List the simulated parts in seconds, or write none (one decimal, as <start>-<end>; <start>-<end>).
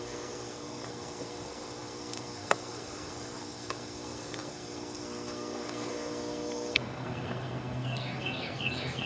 0.0-9.1